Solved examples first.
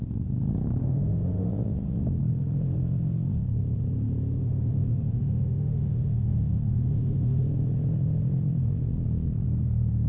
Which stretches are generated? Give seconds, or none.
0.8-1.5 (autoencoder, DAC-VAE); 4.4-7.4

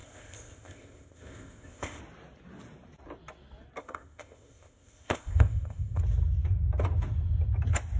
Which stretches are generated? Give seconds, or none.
0.0-2.0 (codec, ZipCodec); 3.8-6.0

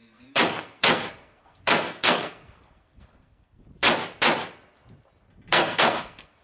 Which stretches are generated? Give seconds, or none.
0.0-3.6 (codec, SNAC); 5.5-6.4

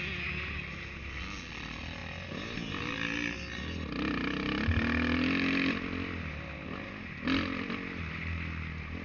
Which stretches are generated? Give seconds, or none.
none

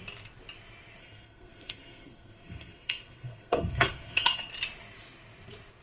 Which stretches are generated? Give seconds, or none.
1.0-4.5 (codec, SNAC)

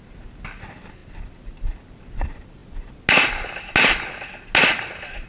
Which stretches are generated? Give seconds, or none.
1.0-2.0 (vocoder, BigVGAN v2)

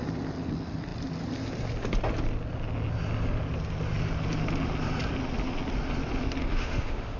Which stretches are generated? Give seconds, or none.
6.4-7.2 (autoencoder, DAC-VAE)